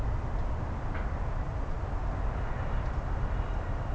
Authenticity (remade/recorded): recorded